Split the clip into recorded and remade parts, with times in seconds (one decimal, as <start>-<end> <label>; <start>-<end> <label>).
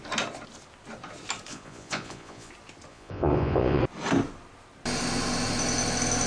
0.0-1.5 recorded; 1.5-2.5 remade; 2.5-2.9 recorded; 2.9-3.8 remade; 3.8-6.3 recorded